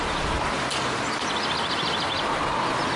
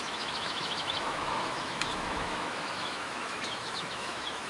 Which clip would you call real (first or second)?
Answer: first